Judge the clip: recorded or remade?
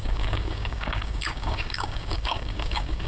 remade